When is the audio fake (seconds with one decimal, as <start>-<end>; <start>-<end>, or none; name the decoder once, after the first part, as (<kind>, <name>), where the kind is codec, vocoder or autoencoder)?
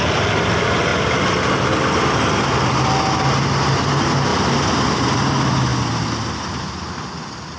4.3-5.0 (vocoder, BigVGAN v2)